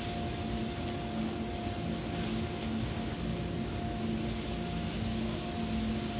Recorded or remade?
recorded